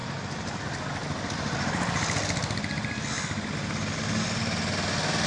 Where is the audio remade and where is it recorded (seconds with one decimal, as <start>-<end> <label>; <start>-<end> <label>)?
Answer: 0.0-0.6 remade; 0.6-5.3 recorded